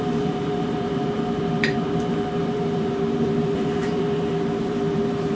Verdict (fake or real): fake